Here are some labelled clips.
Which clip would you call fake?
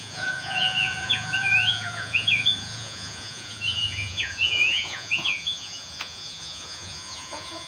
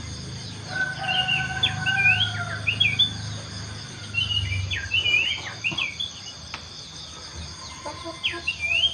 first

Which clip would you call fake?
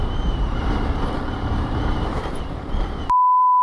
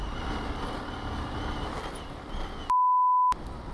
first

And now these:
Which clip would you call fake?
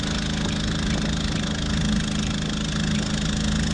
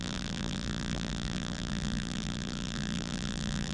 second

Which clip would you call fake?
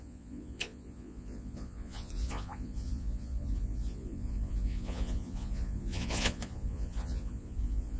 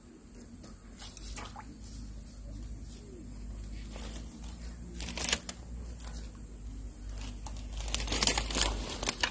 first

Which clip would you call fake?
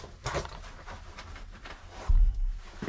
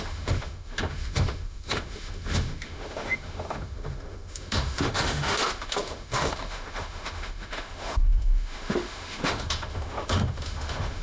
second